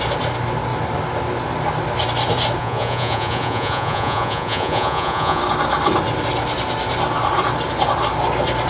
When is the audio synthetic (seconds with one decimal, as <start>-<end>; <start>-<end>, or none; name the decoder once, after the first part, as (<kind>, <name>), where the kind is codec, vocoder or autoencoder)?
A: 2.6-5.4 (vocoder, Vocos)